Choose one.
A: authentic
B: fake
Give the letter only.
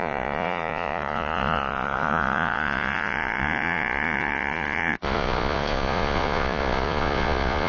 B